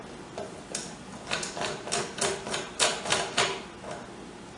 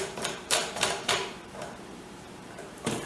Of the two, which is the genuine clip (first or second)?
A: first